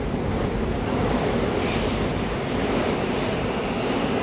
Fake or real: real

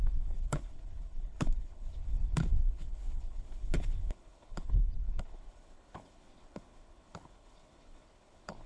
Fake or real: fake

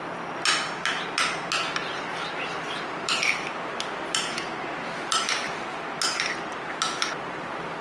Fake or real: real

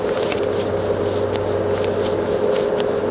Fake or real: real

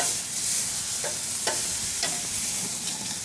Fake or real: real